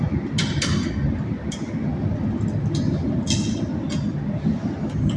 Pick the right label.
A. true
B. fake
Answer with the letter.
A